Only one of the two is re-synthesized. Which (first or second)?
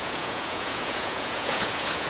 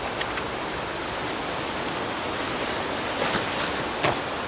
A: first